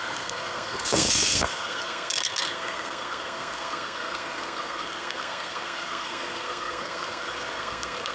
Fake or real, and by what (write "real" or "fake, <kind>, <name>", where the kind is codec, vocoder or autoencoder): fake, codec, SNAC